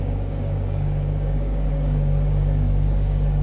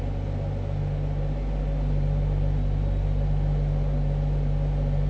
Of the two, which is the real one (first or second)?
second